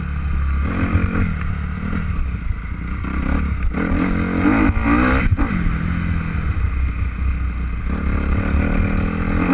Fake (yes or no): no